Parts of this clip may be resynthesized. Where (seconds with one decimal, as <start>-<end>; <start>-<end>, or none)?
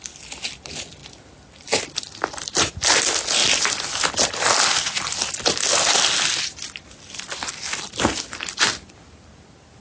none